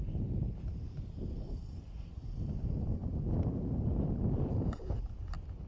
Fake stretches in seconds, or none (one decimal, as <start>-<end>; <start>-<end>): 1.6-2.6